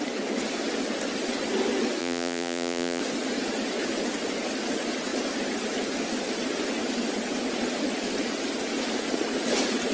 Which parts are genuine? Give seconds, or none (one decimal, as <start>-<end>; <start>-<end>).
0.0-2.0; 3.0-9.9